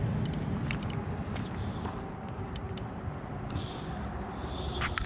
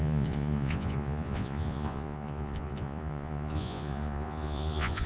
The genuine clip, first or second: first